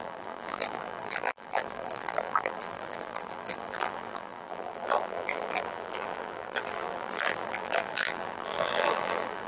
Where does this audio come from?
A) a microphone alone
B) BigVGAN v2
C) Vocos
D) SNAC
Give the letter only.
B